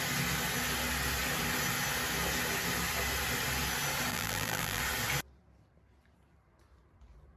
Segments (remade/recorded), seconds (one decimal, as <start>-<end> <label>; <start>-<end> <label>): 0.0-4.1 recorded; 4.1-4.8 remade; 4.8-7.4 recorded